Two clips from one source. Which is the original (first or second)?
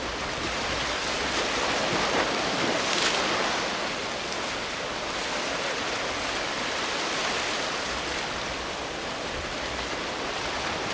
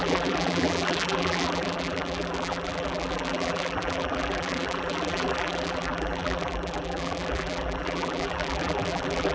first